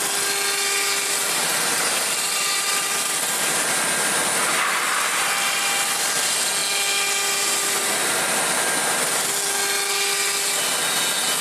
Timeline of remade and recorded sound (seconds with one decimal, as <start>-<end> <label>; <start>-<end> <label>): 0.0-11.4 recorded